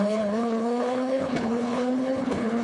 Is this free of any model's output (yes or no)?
no